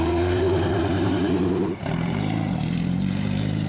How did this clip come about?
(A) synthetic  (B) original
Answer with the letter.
A